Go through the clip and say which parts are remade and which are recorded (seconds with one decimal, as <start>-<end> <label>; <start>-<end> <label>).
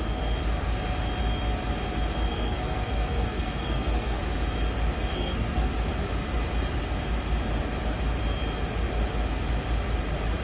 0.0-2.3 recorded; 2.3-4.2 remade; 4.2-5.1 recorded; 5.1-5.7 remade; 5.7-10.4 recorded